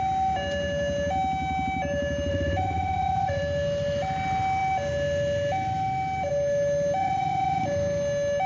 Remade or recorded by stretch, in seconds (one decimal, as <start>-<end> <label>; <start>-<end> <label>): 0.0-2.3 recorded; 2.3-3.4 remade; 3.4-7.0 recorded; 7.0-7.6 remade; 7.6-8.5 recorded